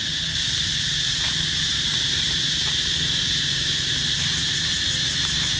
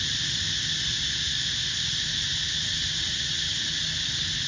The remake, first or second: first